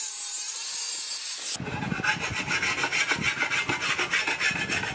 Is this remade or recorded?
recorded